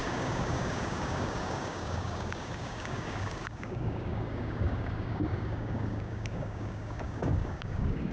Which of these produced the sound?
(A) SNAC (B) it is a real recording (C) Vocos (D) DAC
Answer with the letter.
D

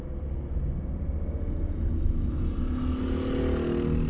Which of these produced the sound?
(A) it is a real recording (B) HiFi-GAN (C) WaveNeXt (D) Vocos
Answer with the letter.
A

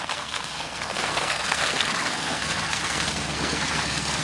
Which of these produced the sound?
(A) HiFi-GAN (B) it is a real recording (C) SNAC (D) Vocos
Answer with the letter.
C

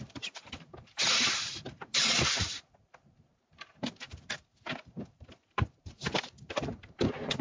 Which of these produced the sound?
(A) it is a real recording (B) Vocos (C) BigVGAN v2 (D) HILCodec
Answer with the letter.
C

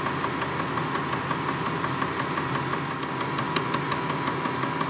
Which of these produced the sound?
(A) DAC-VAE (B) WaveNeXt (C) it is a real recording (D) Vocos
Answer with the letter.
C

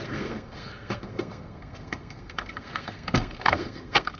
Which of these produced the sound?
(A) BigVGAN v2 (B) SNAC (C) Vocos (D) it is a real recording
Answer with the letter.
B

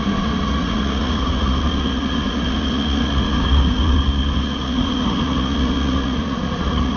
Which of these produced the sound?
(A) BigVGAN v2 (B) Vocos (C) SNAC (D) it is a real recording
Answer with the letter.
B